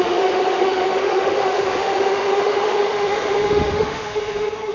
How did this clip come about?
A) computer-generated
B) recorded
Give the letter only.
A